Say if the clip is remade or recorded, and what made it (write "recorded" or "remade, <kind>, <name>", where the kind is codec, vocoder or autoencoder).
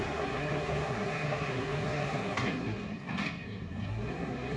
remade, codec, SNAC